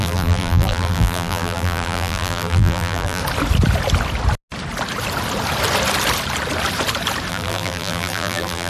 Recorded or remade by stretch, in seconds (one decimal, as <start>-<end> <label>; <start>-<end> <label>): 0.0-3.2 remade; 3.2-7.3 recorded; 7.3-8.7 remade